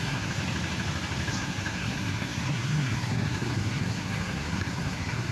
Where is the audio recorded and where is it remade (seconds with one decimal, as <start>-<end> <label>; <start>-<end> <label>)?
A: 0.0-0.4 remade; 0.4-1.3 recorded; 1.3-5.3 remade